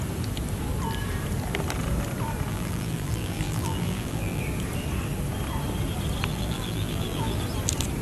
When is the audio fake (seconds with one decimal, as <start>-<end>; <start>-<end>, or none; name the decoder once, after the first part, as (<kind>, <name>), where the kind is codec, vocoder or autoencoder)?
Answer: 2.5-4.4 (vocoder, BigVGAN v2); 6.3-7.4